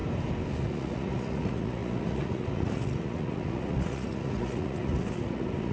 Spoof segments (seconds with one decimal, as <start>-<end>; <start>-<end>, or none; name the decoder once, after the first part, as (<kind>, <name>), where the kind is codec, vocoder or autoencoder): 0.5-5.7 (vocoder, Vocos)